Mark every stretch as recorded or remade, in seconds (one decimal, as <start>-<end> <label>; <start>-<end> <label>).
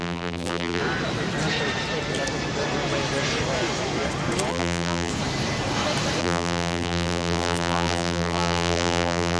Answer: 0.0-0.8 remade; 0.8-4.5 recorded; 4.5-5.1 remade; 5.1-6.2 recorded; 6.2-9.4 remade